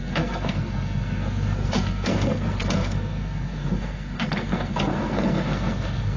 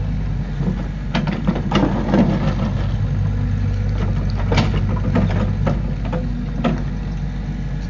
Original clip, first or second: second